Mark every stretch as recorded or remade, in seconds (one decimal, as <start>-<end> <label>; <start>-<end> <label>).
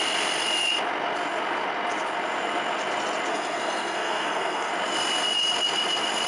0.0-3.3 recorded; 3.3-4.7 remade; 4.7-6.3 recorded